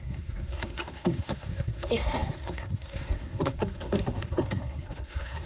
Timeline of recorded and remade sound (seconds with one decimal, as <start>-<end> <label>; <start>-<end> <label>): 0.0-5.5 remade